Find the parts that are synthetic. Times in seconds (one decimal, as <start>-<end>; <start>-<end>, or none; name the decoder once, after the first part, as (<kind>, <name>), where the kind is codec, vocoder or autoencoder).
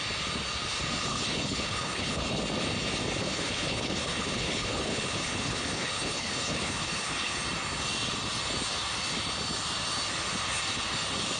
1.1-2.4 (codec, HILCodec); 3.2-7.4